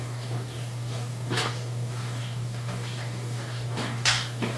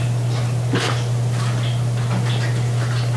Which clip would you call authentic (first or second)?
second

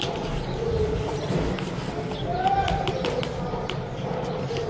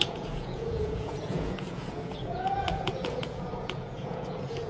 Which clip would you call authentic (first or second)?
first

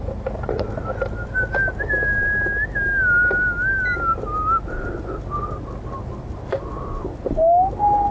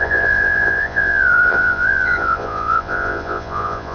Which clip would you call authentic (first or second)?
first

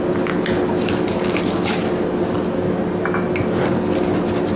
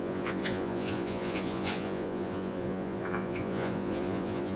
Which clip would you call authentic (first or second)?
first